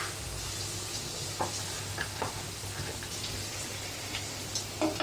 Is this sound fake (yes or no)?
no